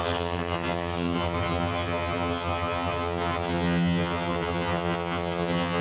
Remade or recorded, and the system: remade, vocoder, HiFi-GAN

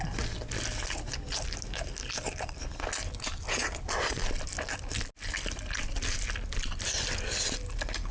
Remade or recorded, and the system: recorded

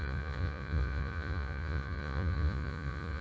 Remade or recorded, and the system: remade, vocoder, Vocos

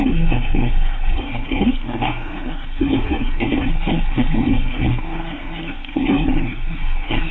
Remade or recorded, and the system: remade, codec, SNAC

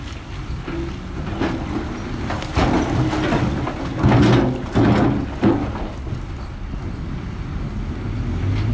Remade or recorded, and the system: recorded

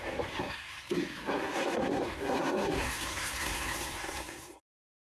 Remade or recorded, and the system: remade, codec, SNAC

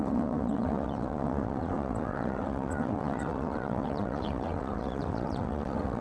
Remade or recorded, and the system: remade, vocoder, WaveNeXt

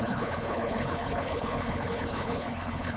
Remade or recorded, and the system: remade, codec, HILCodec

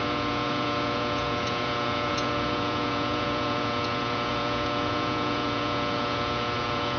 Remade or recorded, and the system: remade, vocoder, Vocos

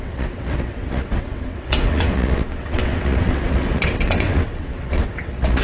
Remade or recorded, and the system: remade, vocoder, WaveNeXt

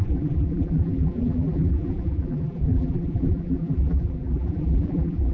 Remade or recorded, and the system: remade, vocoder, BigVGAN v2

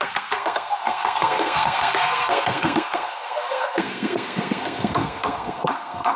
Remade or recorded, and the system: remade, codec, SNAC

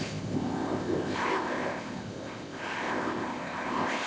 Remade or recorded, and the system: remade, codec, ZipCodec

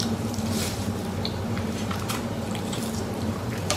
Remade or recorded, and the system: remade, vocoder, BigVGAN v2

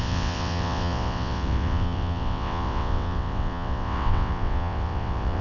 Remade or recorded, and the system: remade, vocoder, WaveNeXt